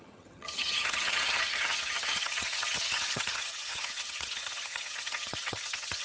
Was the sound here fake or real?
fake